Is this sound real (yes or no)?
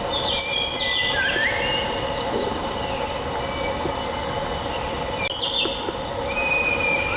yes